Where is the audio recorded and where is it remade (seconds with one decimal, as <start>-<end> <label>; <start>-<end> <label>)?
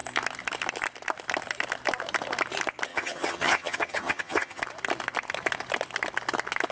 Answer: 0.0-2.9 recorded; 2.9-4.6 remade; 4.6-6.7 recorded